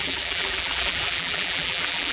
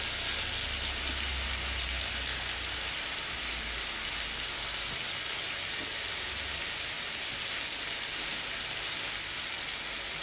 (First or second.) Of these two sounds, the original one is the second